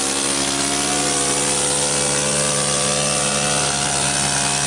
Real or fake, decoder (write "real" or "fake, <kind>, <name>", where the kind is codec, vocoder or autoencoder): real